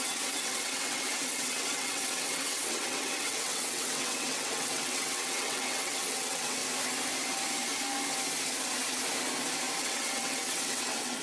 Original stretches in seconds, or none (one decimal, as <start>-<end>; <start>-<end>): 6.6-9.8